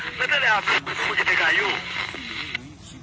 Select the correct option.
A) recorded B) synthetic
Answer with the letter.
A